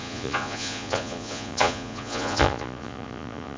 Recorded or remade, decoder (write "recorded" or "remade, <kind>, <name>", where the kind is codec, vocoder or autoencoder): remade, vocoder, Vocos